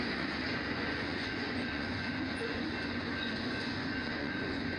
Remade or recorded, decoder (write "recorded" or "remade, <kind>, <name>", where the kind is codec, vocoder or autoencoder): remade, vocoder, Vocos